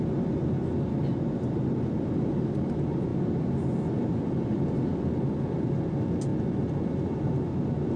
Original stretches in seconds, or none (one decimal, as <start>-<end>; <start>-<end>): 0.0-8.0